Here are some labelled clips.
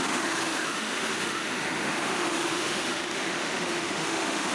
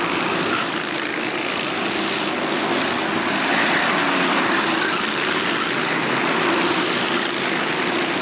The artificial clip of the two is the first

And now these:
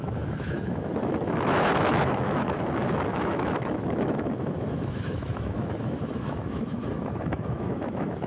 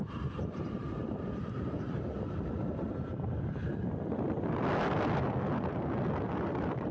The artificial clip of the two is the first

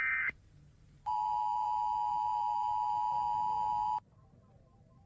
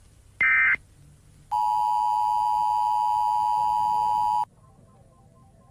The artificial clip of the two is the first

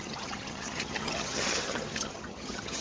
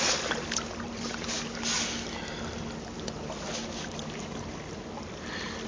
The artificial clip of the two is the first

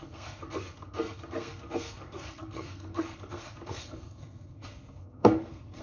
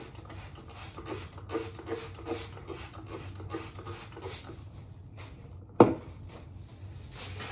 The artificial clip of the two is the first